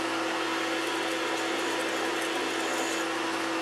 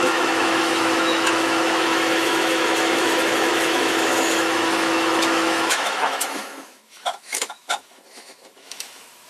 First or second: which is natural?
first